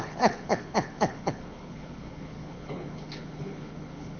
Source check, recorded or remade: remade